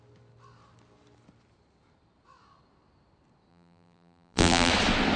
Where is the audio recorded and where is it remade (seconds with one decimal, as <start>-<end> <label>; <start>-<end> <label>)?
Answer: 0.0-3.5 recorded; 3.5-4.7 remade; 4.7-5.2 recorded